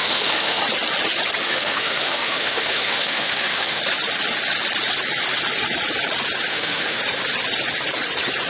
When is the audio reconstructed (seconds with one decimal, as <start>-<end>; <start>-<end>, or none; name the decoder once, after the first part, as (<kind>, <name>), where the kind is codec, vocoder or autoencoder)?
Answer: 0.0-0.6 (autoencoder, DAC-VAE); 1.4-3.8; 6.5-7.0